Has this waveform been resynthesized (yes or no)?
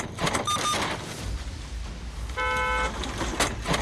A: no